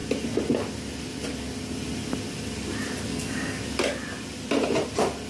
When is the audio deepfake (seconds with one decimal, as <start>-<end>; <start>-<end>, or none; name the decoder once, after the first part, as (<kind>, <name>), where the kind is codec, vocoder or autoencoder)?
3.1-3.6 (codec, SNAC)